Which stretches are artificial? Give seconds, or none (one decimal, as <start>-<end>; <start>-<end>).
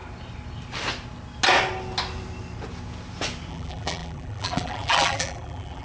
3.5-5.8